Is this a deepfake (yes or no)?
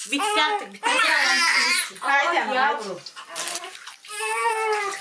no